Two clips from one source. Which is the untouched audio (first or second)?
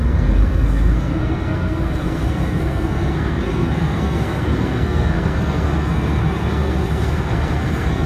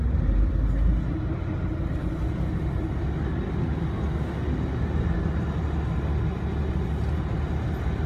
second